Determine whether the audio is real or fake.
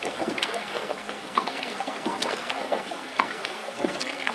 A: fake